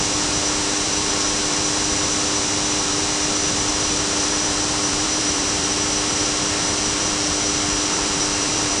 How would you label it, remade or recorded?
remade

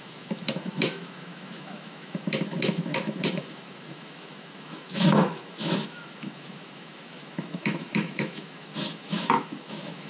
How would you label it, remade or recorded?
remade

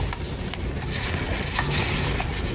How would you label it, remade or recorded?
recorded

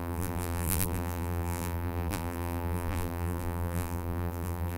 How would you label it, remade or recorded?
remade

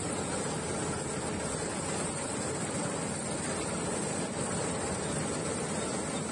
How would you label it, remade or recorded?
recorded